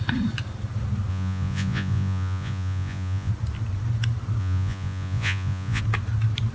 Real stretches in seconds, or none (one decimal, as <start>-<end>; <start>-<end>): 0.0-1.1; 3.3-4.4; 5.8-6.5